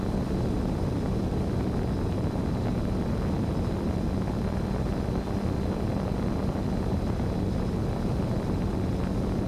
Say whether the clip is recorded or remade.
recorded